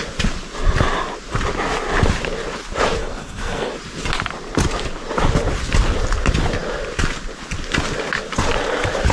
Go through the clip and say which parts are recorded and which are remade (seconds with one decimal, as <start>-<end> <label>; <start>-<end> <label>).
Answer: 0.0-3.0 recorded; 3.0-3.7 remade; 3.7-9.1 recorded